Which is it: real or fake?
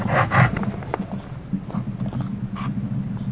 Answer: real